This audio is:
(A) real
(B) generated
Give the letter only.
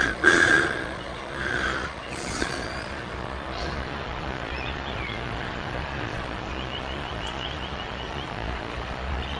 B